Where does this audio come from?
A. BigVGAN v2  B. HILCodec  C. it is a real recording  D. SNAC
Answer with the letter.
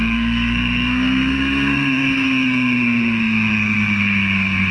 D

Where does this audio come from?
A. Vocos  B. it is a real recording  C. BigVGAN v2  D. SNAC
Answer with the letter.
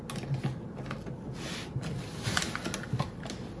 B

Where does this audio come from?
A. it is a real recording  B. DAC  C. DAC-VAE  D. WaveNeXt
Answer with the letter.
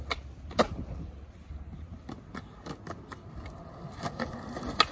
A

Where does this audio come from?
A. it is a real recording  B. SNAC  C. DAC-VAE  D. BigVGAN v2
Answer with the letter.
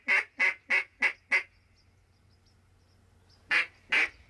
A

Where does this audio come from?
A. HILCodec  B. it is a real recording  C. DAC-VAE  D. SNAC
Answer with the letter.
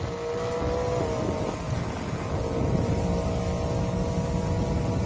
B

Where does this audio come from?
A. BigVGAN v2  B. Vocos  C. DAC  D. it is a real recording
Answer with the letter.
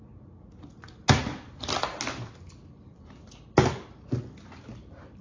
D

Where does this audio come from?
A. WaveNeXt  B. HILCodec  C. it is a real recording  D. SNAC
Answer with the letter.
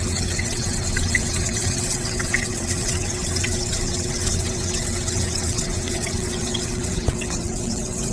A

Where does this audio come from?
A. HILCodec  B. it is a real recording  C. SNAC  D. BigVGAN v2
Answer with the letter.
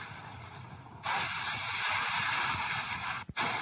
B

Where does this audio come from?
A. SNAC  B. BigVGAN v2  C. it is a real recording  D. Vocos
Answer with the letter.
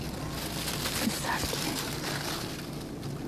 C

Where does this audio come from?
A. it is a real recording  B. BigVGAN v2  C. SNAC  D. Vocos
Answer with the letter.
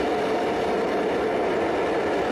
A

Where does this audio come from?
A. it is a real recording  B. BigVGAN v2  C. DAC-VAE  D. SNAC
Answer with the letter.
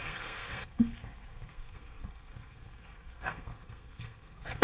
D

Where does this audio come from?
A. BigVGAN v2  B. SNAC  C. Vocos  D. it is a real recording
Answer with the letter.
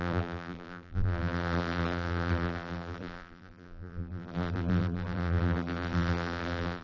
A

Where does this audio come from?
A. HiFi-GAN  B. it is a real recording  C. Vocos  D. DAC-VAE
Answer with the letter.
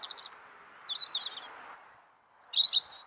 B